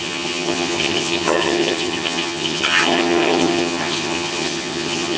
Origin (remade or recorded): remade